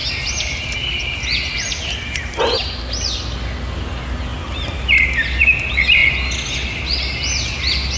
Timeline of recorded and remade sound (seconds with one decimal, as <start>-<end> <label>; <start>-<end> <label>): 0.0-8.0 recorded